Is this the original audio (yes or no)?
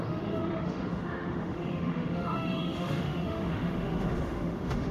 no